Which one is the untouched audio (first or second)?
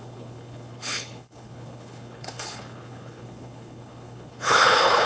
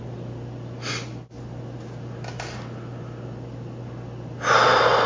second